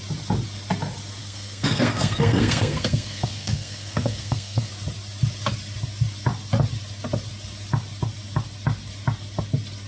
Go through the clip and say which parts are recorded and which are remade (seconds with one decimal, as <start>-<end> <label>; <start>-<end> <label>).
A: 0.0-1.2 recorded; 1.2-4.7 remade; 4.7-9.9 recorded